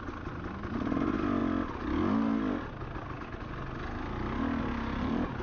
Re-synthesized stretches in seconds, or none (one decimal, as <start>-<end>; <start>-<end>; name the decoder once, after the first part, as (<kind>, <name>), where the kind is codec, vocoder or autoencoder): none